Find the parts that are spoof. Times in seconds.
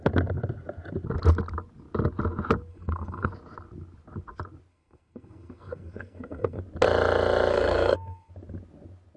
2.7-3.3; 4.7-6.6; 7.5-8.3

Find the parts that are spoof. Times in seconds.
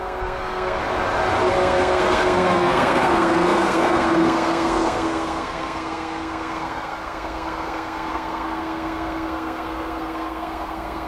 0.0-0.8; 1.5-11.1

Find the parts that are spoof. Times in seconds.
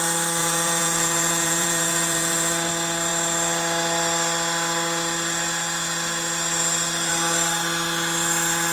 0.4-2.7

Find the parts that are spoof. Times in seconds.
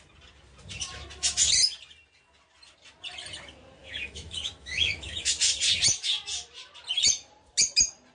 3.8-5.3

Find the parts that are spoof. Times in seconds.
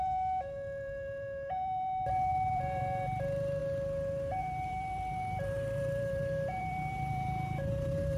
0.0-3.6; 4.4-8.2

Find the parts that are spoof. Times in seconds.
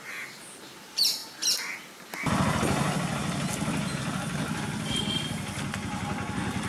none